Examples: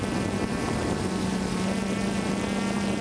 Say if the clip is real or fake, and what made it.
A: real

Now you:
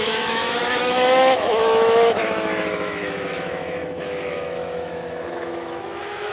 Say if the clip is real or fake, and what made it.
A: fake, autoencoder, DAC-VAE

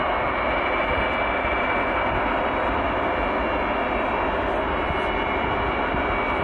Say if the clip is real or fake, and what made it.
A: real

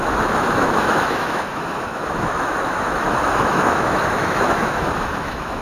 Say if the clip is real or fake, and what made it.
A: fake, autoencoder, DAC-VAE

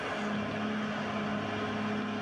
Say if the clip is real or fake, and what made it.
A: real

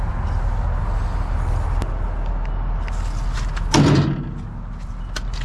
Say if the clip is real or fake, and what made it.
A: real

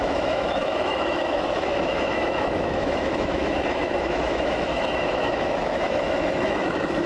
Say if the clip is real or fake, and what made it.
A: fake, autoencoder, DAC-VAE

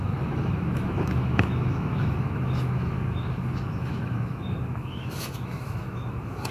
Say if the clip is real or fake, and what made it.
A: fake, autoencoder, DAC-VAE